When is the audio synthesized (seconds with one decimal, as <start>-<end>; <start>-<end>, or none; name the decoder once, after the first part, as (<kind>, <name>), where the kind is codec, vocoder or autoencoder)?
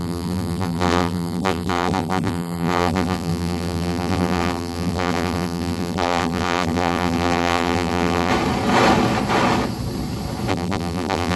0.0-8.3 (vocoder, BigVGAN v2); 10.5-11.4